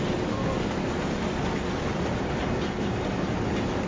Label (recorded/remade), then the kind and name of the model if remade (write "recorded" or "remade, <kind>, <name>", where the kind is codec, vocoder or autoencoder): recorded